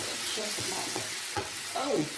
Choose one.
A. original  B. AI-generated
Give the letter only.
B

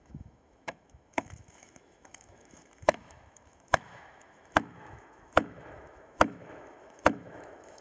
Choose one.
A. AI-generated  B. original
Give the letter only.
A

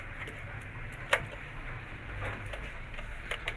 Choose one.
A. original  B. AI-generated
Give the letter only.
A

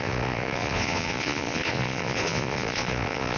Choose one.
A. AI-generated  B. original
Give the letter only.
A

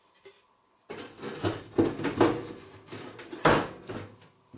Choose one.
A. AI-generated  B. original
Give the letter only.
B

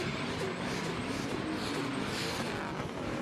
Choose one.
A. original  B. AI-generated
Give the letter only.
A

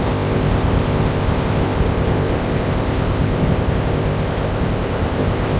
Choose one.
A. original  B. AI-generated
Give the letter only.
B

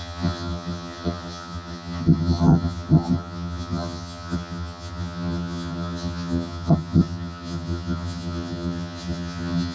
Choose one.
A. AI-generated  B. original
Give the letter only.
A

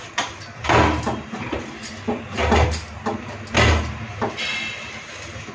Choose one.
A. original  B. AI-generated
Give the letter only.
A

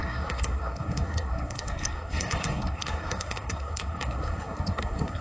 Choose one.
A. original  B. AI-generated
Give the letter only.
B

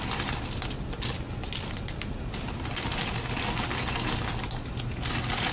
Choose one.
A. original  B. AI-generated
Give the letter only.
A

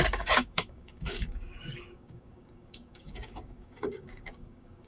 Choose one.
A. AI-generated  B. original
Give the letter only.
A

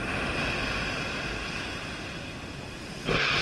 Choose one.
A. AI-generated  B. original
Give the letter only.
B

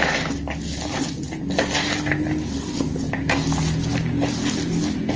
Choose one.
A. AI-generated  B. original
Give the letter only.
B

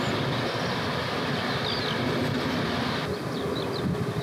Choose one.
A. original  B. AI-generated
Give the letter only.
A